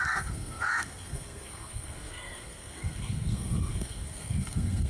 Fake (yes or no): yes